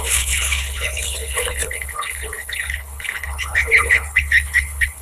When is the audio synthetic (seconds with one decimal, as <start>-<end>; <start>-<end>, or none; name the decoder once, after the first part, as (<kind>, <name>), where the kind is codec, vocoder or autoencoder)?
0.0-5.0 (codec, HILCodec)